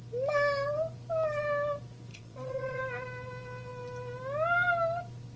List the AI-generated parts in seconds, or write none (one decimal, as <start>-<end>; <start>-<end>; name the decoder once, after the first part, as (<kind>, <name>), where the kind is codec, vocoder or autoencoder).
2.1-2.8 (vocoder, Vocos)